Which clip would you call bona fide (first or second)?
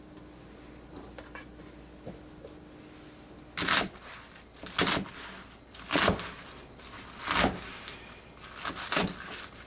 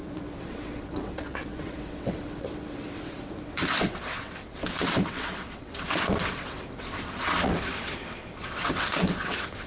first